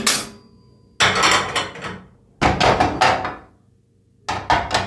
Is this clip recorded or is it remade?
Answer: recorded